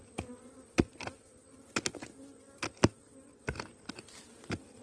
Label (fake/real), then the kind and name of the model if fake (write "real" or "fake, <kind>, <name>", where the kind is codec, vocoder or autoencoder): real